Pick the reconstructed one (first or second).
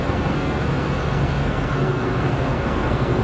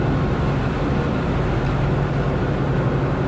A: first